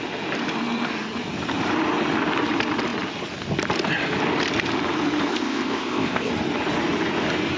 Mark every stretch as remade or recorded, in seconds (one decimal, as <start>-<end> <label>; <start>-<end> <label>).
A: 0.0-5.3 recorded; 5.3-6.3 remade; 6.3-7.6 recorded